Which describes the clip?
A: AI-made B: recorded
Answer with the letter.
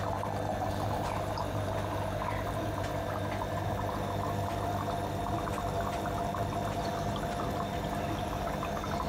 B